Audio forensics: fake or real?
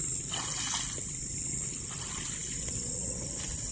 real